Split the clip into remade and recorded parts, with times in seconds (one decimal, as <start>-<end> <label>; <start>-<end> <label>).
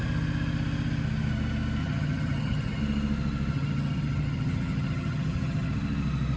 0.0-1.8 recorded; 1.8-2.8 remade; 2.8-3.5 recorded; 3.5-5.7 remade; 5.7-6.4 recorded